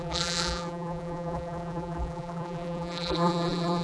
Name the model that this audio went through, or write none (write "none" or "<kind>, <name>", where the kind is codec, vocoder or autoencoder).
vocoder, BigVGAN v2